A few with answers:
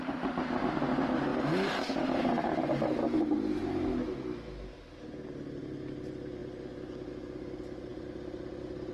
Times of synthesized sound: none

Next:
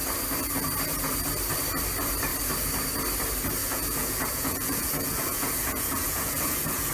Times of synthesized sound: 3.6-6.9 (vocoder, Vocos)

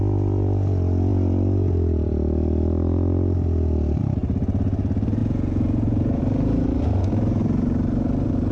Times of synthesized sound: 5.2-6.2 (vocoder, Vocos)

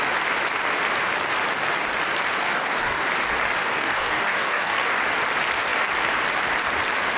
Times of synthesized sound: 2.4-3.0 (codec, DAC); 3.6-5.0

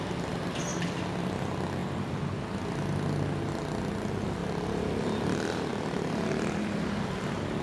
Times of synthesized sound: 1.8-2.4 (vocoder, BigVGAN v2); 4.4-5.0; 5.7-6.8

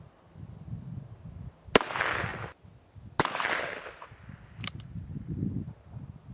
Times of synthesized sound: none

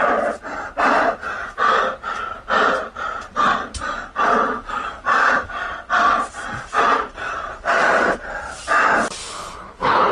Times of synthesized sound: 9.2-10.1 (codec, HILCodec)